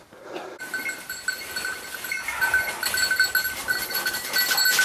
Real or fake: real